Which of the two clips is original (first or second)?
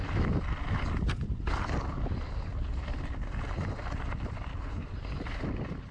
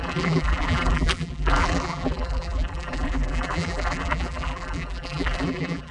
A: first